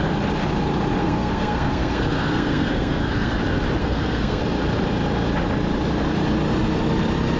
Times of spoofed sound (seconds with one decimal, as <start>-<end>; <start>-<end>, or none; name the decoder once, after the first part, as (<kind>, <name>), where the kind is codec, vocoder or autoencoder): 1.0-3.4 (codec, SNAC); 3.8-4.4